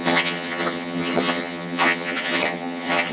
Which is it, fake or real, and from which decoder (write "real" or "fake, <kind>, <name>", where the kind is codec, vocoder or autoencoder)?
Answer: fake, vocoder, HiFi-GAN